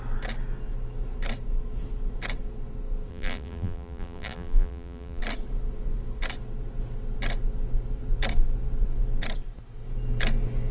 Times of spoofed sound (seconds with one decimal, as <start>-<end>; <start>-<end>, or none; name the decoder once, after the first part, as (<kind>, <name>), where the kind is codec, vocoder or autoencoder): 3.1-5.2 (vocoder, BigVGAN v2)